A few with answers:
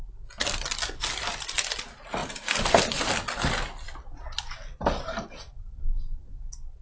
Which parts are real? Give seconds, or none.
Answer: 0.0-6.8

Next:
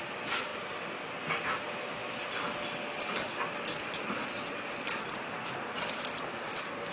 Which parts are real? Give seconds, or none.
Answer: 0.0-3.7; 4.4-6.9

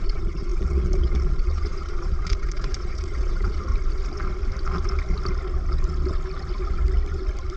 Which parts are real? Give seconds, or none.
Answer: 3.7-7.6

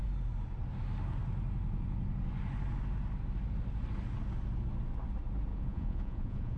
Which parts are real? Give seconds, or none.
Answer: 0.0-5.5

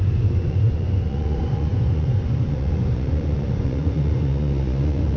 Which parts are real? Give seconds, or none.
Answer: none

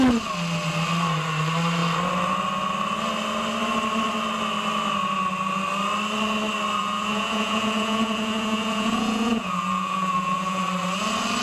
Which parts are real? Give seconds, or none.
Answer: 0.0-6.8; 10.6-11.4

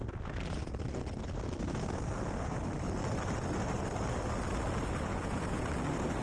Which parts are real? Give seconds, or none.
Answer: 0.0-5.1; 5.7-6.2

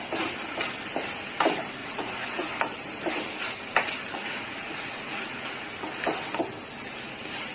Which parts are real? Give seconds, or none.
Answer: 0.0-1.8; 2.5-4.2; 5.2-7.5